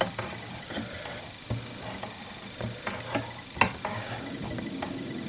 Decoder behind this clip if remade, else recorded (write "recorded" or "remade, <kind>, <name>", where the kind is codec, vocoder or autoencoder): recorded